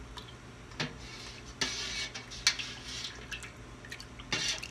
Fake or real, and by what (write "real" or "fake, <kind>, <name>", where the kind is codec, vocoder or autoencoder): real